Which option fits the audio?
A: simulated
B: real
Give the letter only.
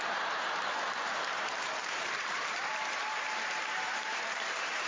A